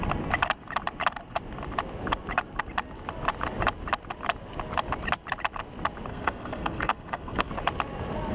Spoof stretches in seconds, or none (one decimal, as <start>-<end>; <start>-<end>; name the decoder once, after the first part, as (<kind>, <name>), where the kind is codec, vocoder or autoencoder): 6.1-7.5 (codec, SNAC)

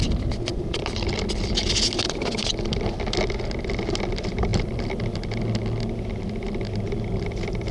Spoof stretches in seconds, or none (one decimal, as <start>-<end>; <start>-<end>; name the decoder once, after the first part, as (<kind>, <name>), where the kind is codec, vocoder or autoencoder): none

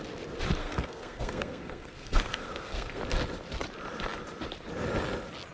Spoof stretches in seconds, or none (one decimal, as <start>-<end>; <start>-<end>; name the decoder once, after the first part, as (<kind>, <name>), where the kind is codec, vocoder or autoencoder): 0.6-3.0 (codec, SNAC)

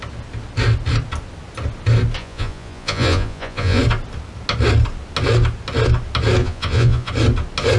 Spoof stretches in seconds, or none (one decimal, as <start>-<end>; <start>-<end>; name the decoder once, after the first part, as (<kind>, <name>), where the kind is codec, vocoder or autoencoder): 2.2-3.8 (vocoder, Vocos); 6.4-7.1

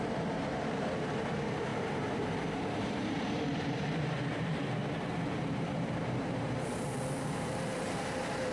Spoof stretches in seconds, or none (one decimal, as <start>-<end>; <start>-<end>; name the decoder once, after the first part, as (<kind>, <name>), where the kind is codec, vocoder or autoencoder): 0.0-4.8 (vocoder, BigVGAN v2); 5.4-8.5

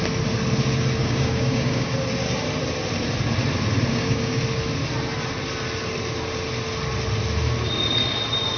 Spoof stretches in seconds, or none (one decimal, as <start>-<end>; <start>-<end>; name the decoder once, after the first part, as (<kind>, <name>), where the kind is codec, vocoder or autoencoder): 1.0-1.9 (codec, DAC); 3.9-4.4

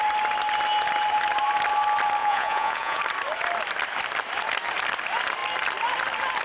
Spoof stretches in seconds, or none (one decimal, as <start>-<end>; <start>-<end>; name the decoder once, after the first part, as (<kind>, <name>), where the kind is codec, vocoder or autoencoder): 2.2-3.0 (vocoder, Vocos)